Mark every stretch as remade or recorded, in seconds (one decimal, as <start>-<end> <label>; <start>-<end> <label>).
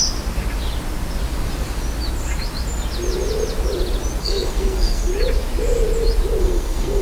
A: 0.0-4.2 recorded; 4.2-5.1 remade; 5.1-6.4 recorded; 6.4-7.0 remade